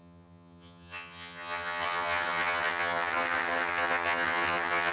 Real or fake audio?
fake